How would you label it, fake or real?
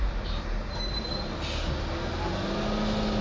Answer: real